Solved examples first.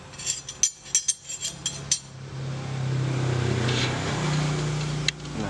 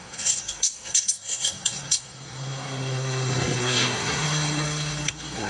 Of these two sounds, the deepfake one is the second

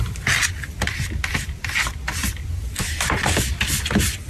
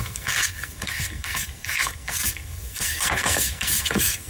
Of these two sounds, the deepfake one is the second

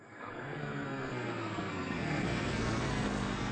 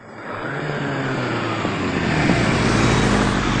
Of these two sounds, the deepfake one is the first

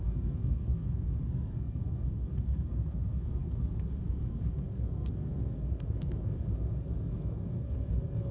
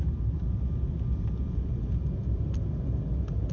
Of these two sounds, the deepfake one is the first